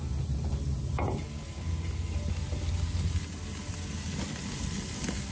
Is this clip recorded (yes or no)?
yes